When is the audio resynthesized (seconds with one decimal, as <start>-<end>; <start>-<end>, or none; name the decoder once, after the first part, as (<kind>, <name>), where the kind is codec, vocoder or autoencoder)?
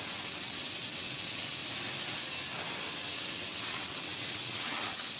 0.0-1.6 (vocoder, WaveNeXt); 3.0-5.2